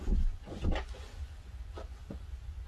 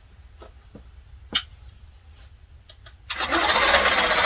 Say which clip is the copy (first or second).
first